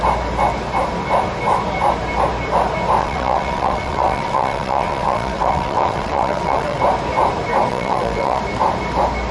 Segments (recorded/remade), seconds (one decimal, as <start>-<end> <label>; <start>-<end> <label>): 0.0-3.0 recorded; 3.0-6.8 remade; 6.8-7.7 recorded; 7.7-8.4 remade; 8.4-9.3 recorded

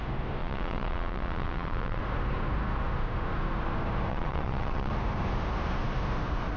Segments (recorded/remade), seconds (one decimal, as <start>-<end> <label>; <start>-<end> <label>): 0.0-0.4 recorded; 0.4-2.0 remade; 2.0-4.1 recorded; 4.1-4.9 remade; 4.9-6.6 recorded

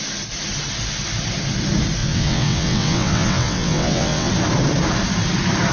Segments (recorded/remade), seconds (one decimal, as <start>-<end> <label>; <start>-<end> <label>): 0.0-2.0 recorded; 2.0-4.3 remade; 4.3-5.7 recorded

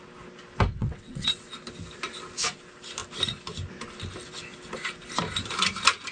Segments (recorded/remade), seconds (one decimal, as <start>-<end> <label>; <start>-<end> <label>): 0.0-0.8 recorded; 0.8-1.5 remade; 1.5-6.1 recorded

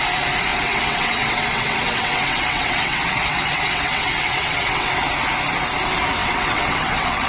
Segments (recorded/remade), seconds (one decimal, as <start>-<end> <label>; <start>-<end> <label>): 0.0-0.5 recorded; 0.5-4.9 remade; 4.9-6.2 recorded; 6.2-7.3 remade